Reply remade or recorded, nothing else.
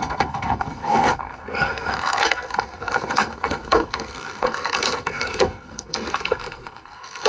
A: remade